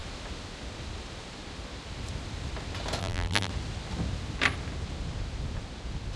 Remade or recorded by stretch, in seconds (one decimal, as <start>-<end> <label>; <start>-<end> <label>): 0.0-3.0 recorded; 3.0-3.5 remade; 3.5-6.2 recorded